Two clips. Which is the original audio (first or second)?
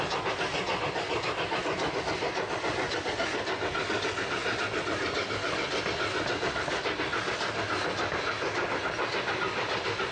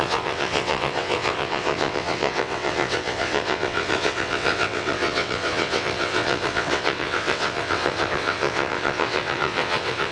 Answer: first